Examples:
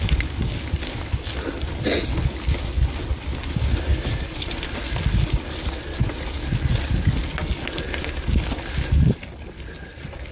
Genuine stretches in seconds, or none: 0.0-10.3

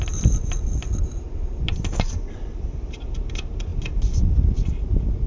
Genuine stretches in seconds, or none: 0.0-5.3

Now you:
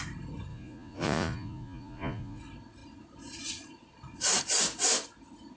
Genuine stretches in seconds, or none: 0.0-0.5; 2.4-5.6

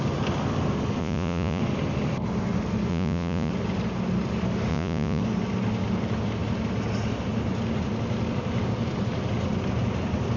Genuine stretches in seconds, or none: 0.0-1.0; 1.6-2.9; 3.5-4.7; 5.2-10.4

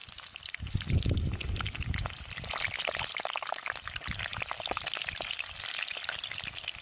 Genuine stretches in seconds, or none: 0.0-6.8

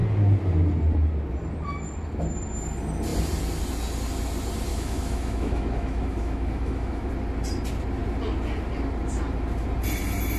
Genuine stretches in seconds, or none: 0.0-4.7; 7.1-10.4

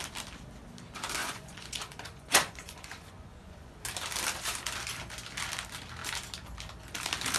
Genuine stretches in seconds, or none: 0.0-1.2; 3.8-7.4